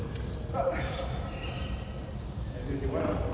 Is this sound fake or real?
real